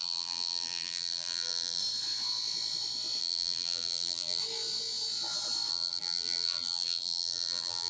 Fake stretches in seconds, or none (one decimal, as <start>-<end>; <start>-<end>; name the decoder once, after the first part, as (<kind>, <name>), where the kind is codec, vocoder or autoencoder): 0.0-1.8 (vocoder, BigVGAN v2); 3.2-4.4; 5.7-7.9